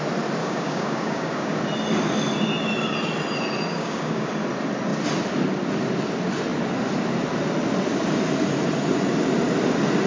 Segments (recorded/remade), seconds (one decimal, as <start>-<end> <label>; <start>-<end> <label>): 0.0-0.4 recorded; 0.4-1.6 remade; 1.6-3.7 recorded; 3.7-4.3 remade; 4.3-10.1 recorded